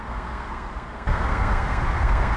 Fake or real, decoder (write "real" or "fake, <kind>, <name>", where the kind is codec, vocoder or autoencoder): fake, codec, SNAC